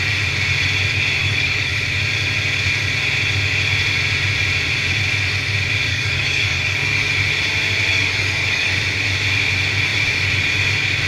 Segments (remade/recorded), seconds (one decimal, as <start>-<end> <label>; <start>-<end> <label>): 0.0-1.2 recorded; 1.2-1.7 remade; 1.7-5.9 recorded; 5.9-7.1 remade; 7.1-7.9 recorded; 7.9-8.7 remade; 8.7-11.1 recorded